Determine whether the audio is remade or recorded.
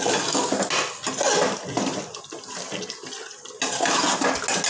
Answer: recorded